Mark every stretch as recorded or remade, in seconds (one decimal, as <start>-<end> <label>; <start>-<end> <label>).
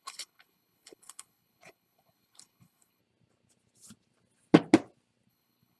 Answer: 0.0-3.0 remade; 3.0-5.3 recorded; 5.3-5.8 remade